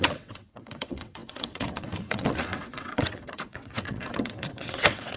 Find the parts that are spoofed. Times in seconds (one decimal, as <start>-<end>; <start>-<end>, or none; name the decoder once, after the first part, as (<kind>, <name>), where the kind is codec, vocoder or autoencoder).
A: 0.0-5.2 (vocoder, WaveNeXt)